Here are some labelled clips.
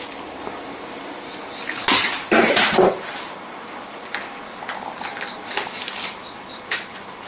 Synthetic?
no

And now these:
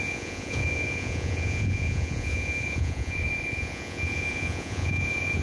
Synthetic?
yes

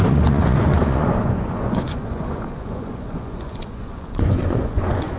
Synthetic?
yes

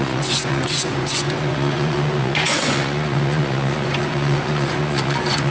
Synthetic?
yes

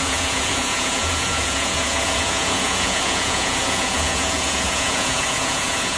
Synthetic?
yes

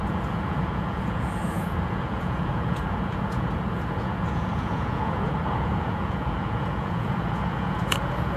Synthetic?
yes